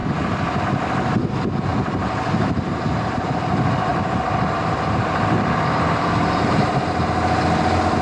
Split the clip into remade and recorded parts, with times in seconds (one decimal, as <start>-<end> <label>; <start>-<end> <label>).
0.0-3.9 recorded; 3.9-6.7 remade; 6.7-8.0 recorded